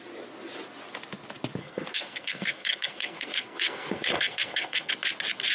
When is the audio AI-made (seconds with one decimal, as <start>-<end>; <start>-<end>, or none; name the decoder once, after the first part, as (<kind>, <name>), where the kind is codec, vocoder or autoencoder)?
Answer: 1.6-4.9 (codec, SNAC)